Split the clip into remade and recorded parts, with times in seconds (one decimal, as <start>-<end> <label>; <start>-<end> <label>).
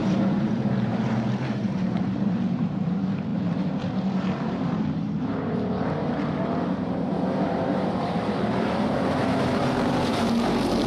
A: 0.0-10.9 remade